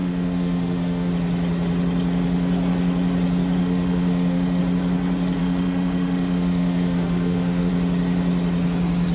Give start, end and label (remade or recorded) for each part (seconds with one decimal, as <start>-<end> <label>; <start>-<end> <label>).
0.0-1.1 remade; 1.1-3.6 recorded; 3.6-4.6 remade; 4.6-5.4 recorded; 5.4-7.7 remade; 7.7-9.1 recorded